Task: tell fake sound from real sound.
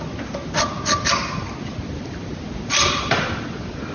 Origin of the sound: real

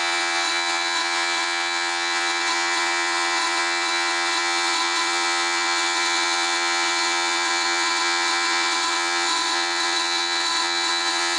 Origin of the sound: fake